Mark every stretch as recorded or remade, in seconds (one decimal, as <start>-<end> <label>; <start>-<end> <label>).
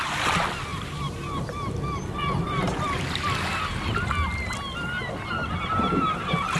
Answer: 0.0-0.7 recorded; 0.7-1.4 remade; 1.4-6.6 recorded